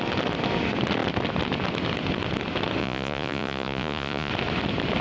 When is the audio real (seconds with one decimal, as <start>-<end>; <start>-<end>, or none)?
0.0-2.8; 4.3-5.0